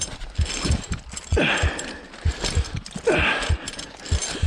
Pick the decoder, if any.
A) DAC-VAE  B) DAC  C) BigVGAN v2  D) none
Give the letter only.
D